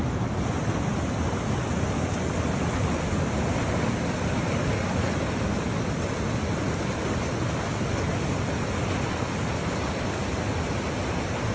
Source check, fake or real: real